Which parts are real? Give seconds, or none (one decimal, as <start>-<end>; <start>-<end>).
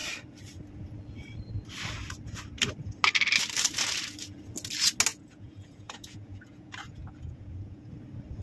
0.0-5.1; 7.9-8.4